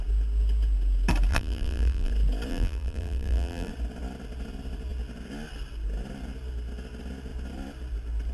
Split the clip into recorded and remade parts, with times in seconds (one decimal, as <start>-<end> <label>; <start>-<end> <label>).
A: 0.0-1.3 recorded; 1.3-2.1 remade; 2.1-2.5 recorded; 2.5-3.7 remade; 3.7-8.3 recorded